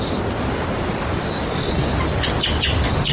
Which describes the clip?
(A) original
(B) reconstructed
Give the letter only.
A